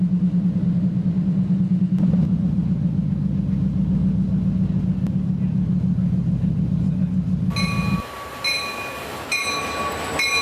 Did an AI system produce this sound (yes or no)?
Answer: no